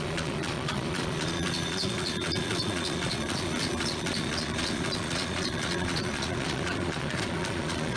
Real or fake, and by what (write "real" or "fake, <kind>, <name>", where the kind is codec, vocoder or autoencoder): fake, vocoder, Vocos